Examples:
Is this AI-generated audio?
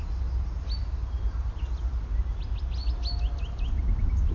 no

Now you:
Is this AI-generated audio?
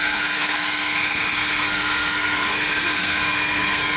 yes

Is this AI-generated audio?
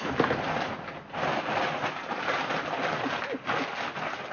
no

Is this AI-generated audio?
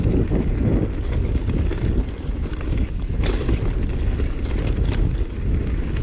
no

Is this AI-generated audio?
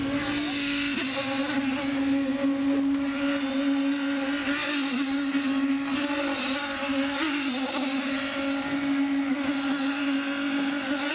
no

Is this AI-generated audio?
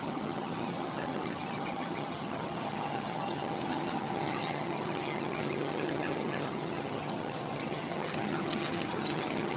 yes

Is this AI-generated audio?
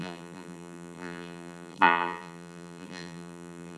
yes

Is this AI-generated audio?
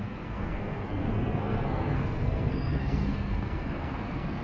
yes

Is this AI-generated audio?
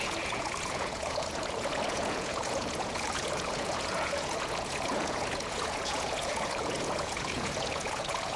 yes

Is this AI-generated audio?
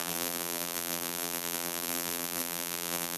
yes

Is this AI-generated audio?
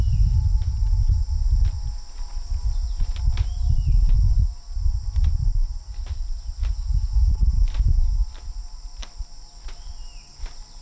no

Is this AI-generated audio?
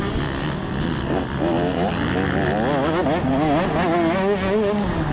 no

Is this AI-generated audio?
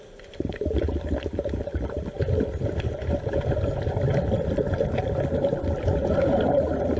no